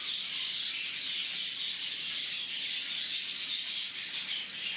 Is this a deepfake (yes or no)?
no